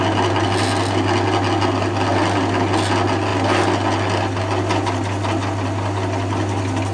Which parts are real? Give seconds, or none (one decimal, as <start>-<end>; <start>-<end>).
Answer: 0.0-6.9